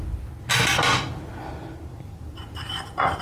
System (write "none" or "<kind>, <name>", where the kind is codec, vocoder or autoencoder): none